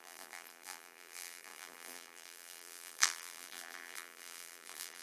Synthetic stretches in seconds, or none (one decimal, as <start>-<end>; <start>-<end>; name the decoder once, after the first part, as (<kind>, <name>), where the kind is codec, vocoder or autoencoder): 0.0-5.0 (vocoder, BigVGAN v2)